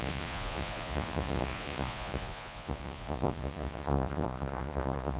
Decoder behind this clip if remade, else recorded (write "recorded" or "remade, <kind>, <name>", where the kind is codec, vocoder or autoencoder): remade, vocoder, Vocos